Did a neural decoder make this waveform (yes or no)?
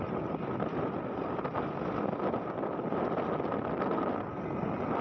no